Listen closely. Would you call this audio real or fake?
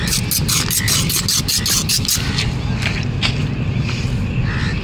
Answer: real